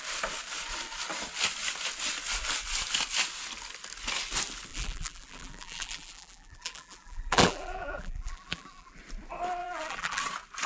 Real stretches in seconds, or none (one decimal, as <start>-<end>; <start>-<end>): 0.0-4.7; 9.0-9.6; 10.2-10.7